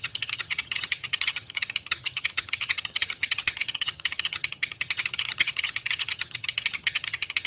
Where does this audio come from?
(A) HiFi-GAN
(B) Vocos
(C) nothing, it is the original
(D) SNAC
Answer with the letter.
A